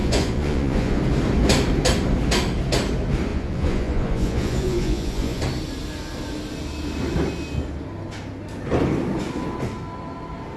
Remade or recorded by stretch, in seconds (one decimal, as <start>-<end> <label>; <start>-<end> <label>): 0.0-1.0 remade; 1.0-3.3 recorded; 3.3-5.4 remade; 5.4-10.6 recorded